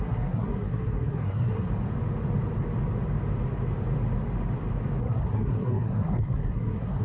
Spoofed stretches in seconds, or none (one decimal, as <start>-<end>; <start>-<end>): 0.0-1.7; 5.0-7.0